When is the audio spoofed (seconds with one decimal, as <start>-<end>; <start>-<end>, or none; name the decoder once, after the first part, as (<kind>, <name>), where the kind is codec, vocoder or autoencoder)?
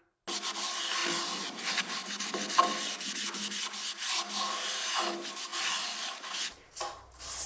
none